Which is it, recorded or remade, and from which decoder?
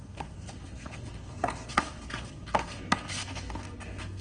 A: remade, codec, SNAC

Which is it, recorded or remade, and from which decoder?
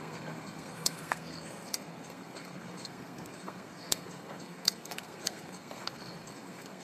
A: remade, codec, SNAC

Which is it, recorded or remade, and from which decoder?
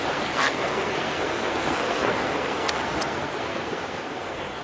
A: remade, codec, SNAC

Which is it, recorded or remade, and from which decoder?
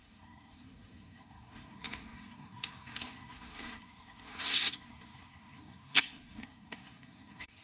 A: remade, codec, SNAC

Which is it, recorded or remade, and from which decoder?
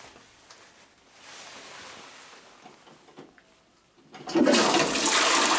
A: recorded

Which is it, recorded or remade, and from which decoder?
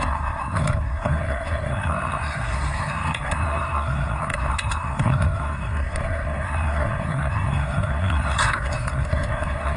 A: remade, codec, SNAC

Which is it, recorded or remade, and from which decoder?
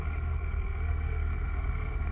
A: remade, codec, SNAC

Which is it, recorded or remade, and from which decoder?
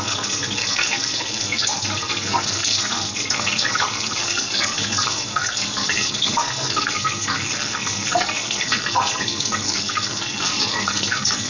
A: remade, codec, SNAC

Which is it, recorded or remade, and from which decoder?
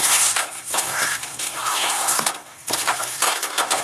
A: remade, codec, SNAC